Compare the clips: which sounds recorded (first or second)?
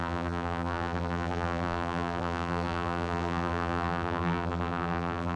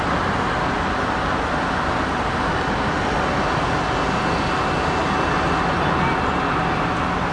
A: second